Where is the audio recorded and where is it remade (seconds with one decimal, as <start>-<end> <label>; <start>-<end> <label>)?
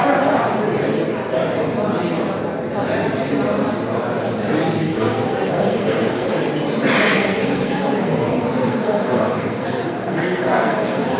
0.0-4.9 recorded; 4.9-6.4 remade; 6.4-7.1 recorded; 7.1-11.2 remade